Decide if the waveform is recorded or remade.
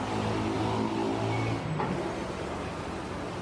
recorded